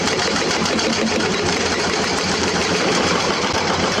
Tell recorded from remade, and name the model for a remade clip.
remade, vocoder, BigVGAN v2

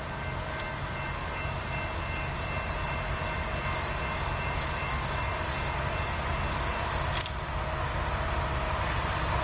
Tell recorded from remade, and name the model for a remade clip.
recorded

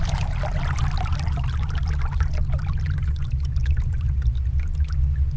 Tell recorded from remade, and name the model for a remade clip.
recorded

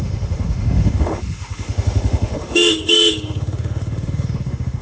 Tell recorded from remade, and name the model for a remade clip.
remade, autoencoder, DAC-VAE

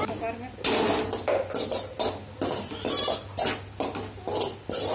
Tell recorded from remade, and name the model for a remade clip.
recorded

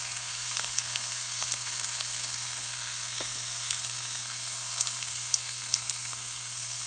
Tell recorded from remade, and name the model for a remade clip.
remade, codec, SNAC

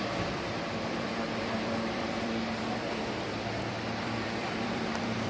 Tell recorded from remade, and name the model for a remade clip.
remade, vocoder, BigVGAN v2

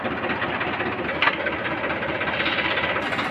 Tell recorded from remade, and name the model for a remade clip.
recorded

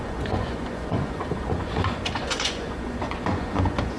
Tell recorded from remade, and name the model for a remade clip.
remade, vocoder, Vocos